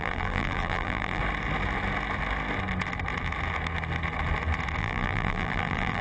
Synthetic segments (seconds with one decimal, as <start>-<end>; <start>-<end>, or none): 0.0-1.2; 4.8-6.0